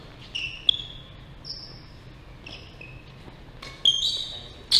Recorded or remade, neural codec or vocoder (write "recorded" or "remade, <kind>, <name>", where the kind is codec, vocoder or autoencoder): recorded